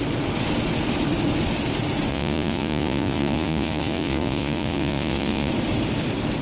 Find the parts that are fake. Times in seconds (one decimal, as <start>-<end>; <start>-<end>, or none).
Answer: 2.1-5.5